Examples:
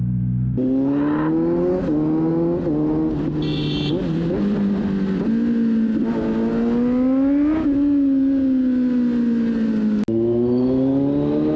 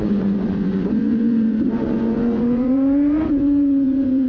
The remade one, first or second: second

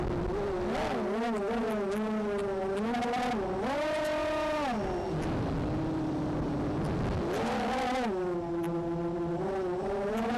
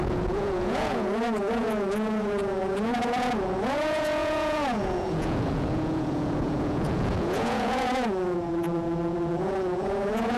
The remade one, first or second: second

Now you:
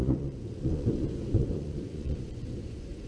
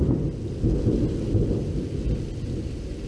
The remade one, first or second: first